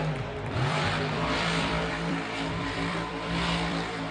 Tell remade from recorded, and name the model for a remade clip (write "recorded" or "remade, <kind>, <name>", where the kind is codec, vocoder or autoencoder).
remade, vocoder, BigVGAN v2